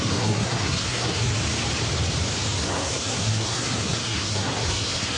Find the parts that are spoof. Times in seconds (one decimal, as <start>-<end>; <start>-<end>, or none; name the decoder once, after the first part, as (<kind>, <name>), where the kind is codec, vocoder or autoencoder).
0.0-1.3 (codec, SNAC); 2.6-5.2